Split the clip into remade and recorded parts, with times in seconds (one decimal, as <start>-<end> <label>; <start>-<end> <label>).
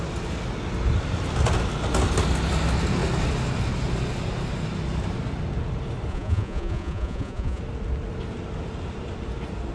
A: 0.0-6.1 recorded; 6.1-7.6 remade; 7.6-9.7 recorded